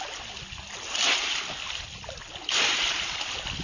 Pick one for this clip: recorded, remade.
recorded